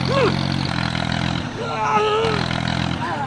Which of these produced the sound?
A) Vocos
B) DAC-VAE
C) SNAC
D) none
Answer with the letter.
D